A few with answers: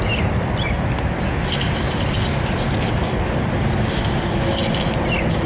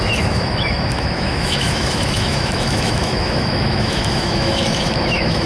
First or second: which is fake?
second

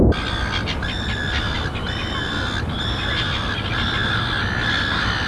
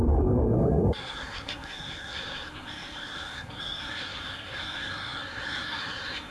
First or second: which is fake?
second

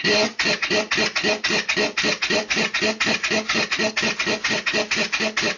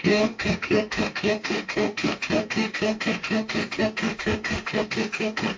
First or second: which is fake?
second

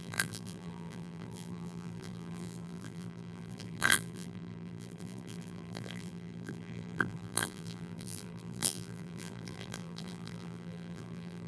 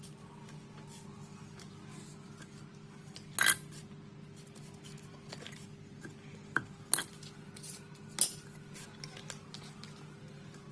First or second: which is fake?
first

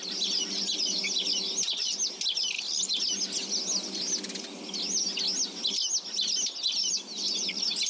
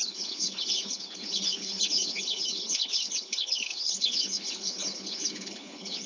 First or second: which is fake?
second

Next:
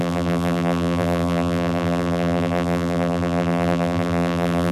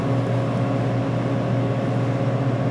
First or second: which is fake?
first